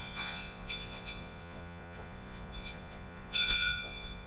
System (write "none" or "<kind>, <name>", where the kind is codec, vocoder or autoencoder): vocoder, Vocos